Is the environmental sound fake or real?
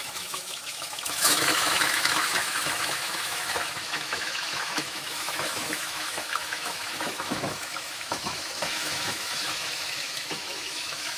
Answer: fake